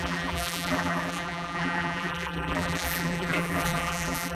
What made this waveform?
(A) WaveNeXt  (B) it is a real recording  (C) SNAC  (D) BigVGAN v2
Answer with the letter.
D